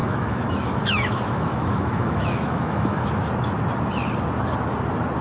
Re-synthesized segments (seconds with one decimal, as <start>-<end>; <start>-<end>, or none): 0.0-3.1